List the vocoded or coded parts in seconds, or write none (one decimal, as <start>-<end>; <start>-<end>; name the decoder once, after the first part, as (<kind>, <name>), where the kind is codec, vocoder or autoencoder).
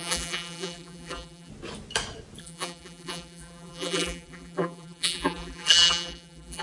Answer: 0.0-1.5 (vocoder, BigVGAN v2); 2.4-6.6